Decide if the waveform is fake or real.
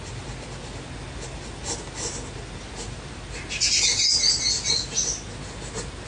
real